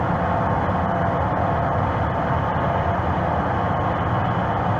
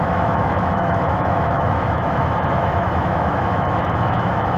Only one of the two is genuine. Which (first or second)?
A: first